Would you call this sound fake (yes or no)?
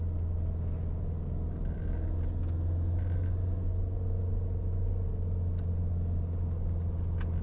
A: no